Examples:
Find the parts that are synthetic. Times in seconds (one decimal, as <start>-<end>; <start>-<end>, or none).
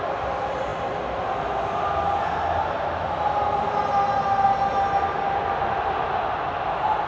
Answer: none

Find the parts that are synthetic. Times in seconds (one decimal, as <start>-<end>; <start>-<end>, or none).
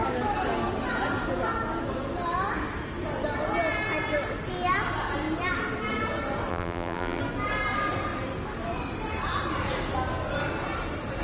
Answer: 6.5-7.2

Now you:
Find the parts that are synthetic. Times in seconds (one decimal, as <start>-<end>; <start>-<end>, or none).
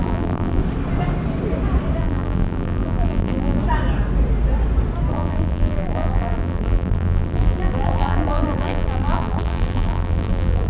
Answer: 0.0-0.6; 2.0-3.6; 5.1-10.7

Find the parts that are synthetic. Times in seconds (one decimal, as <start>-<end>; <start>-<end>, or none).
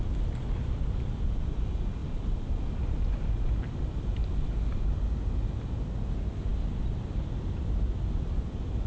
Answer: 2.0-3.1; 6.5-8.9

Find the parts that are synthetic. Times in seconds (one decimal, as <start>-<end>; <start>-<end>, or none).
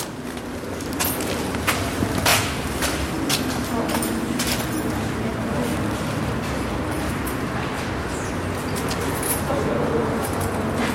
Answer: 2.3-4.7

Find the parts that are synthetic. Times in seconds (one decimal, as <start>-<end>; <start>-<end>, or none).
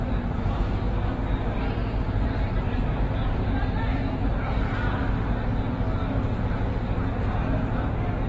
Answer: 1.8-5.2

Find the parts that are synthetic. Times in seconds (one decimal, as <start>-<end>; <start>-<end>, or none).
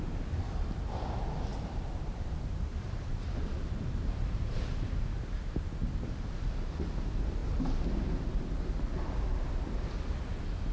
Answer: 1.5-4.7; 5.8-6.5